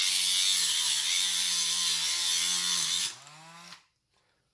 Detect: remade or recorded recorded